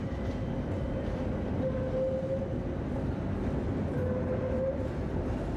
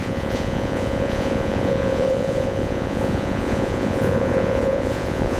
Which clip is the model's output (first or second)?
second